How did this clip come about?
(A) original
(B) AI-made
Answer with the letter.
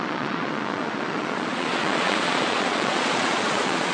B